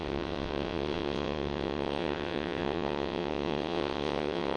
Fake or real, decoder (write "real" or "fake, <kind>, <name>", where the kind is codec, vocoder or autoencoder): fake, vocoder, WaveNeXt